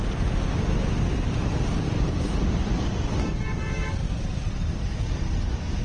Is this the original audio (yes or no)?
yes